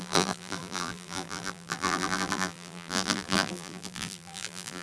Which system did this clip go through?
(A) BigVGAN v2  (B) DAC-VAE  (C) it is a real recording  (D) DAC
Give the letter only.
A